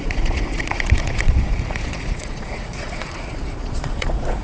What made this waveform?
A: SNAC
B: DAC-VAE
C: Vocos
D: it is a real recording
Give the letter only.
C